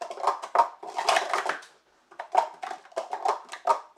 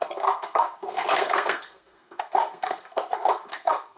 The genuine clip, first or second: first